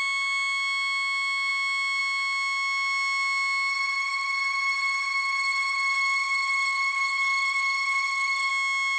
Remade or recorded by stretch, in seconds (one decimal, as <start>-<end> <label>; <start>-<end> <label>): 0.0-3.7 recorded; 3.7-8.5 remade; 8.5-9.0 recorded